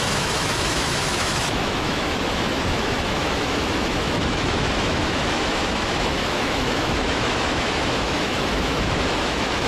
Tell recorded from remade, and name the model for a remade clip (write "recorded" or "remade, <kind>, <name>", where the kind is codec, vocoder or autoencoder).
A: remade, autoencoder, DAC-VAE